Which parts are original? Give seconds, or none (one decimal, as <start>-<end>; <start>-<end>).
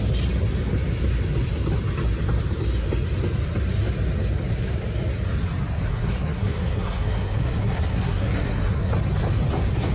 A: 0.0-5.9; 8.9-9.9